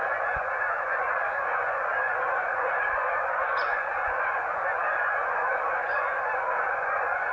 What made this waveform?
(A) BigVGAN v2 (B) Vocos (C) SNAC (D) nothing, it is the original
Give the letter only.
B